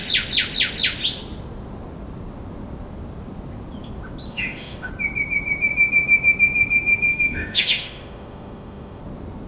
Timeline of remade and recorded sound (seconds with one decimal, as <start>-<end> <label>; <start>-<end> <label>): 0.0-4.3 recorded; 4.3-4.9 remade; 4.9-7.1 recorded; 7.1-9.0 remade; 9.0-9.5 recorded